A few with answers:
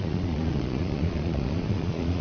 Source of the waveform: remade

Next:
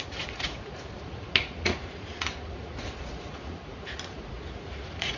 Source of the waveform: remade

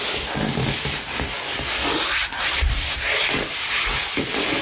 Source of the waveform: recorded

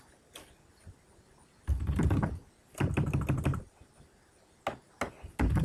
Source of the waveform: recorded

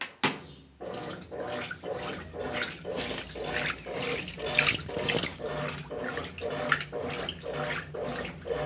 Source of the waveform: recorded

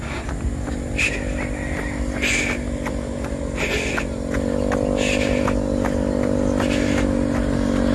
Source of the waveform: recorded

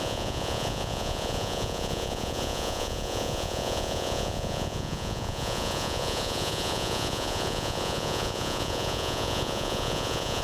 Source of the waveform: remade